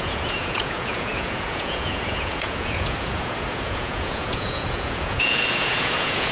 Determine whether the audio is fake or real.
fake